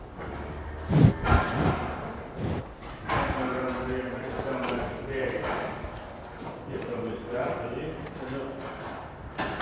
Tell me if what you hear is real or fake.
real